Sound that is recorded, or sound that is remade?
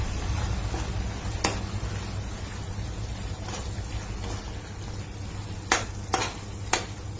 recorded